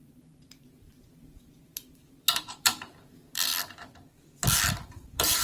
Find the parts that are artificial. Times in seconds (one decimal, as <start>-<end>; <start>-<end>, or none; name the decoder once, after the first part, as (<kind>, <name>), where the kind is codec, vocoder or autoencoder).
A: 0.0-3.5 (vocoder, BigVGAN v2); 4.8-5.4